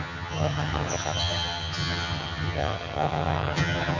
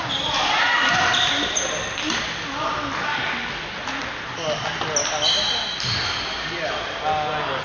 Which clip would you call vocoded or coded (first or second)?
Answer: first